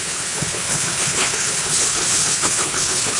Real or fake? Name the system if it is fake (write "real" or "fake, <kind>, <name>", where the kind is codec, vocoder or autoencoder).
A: fake, codec, HILCodec